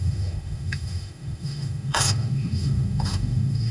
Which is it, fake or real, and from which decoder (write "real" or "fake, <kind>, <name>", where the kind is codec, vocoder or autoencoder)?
fake, autoencoder, DAC-VAE